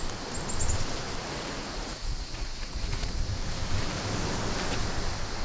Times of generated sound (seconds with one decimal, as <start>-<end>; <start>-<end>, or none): 1.2-3.2